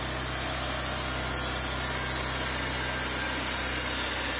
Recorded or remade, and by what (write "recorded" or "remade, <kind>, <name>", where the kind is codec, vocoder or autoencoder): recorded